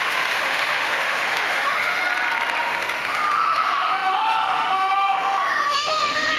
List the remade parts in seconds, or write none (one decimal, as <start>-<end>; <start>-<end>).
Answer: 0.0-2.0; 2.6-6.4